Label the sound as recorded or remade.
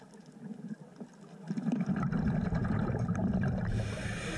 recorded